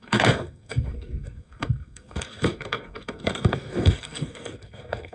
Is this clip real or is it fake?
fake